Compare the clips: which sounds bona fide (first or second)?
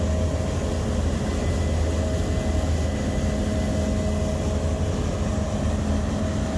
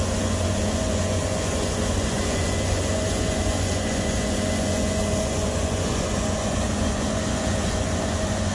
first